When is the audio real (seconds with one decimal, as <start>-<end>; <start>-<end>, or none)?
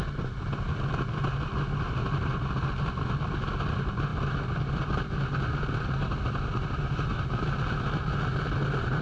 0.0-9.0